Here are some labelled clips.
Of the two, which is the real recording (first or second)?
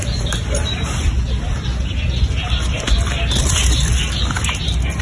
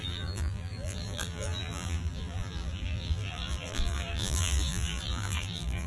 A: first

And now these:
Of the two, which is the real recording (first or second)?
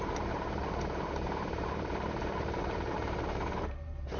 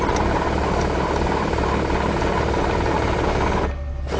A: second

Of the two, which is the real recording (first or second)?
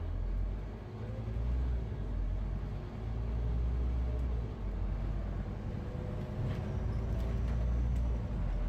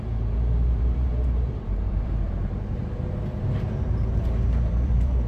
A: first